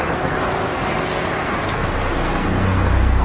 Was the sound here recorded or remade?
remade